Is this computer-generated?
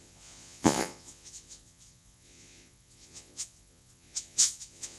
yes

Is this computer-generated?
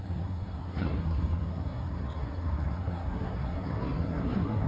yes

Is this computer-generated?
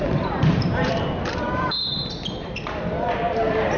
yes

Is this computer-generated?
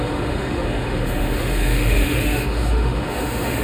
yes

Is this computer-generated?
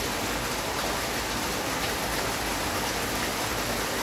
no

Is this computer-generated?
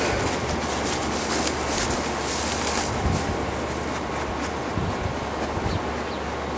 no